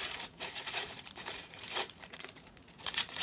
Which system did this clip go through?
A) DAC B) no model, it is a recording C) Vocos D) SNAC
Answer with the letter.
C